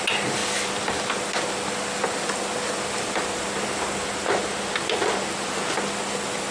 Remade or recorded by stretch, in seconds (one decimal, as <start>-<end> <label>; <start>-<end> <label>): 0.0-6.5 recorded